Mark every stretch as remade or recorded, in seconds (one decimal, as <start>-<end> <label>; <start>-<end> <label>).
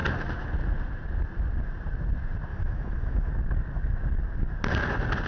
0.0-2.5 recorded; 2.5-3.3 remade; 3.3-5.3 recorded